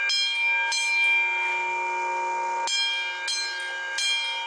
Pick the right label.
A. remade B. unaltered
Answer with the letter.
B